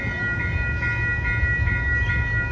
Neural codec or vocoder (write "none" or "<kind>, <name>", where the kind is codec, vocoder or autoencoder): none